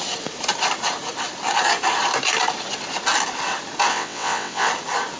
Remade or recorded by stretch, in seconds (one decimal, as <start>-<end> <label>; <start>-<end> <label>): 0.0-3.9 recorded; 3.9-4.7 remade; 4.7-5.2 recorded